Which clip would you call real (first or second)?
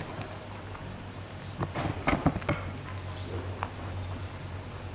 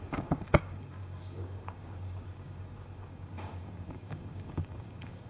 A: first